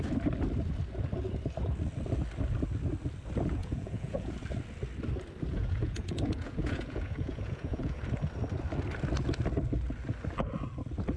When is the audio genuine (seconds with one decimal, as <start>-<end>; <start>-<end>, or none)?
0.0-3.6; 4.3-5.5; 8.0-11.2

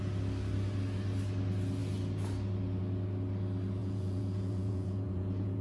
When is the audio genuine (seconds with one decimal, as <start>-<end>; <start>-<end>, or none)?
0.0-3.8

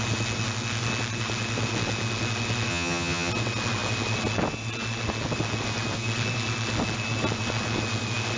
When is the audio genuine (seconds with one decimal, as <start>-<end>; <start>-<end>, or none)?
0.0-2.7; 3.3-8.4

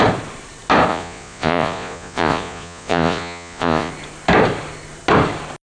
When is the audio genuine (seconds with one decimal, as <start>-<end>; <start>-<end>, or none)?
0.0-0.9; 3.9-5.7

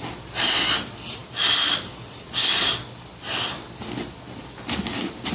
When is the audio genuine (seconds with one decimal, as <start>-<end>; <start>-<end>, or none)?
0.0-5.3

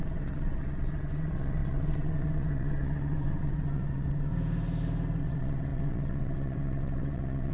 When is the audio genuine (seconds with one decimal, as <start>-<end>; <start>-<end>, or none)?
4.3-5.2

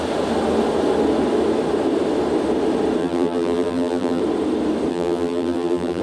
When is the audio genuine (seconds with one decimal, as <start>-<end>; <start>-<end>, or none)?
0.0-3.0; 4.2-4.9

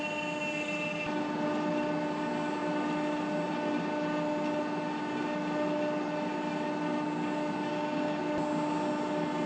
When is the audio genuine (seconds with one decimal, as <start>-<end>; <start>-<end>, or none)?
0.0-7.7; 8.2-9.5